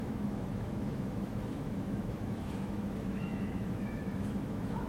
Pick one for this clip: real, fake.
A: fake